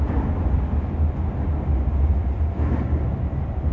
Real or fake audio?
real